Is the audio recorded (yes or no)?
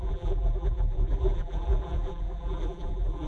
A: no